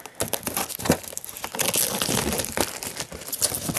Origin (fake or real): real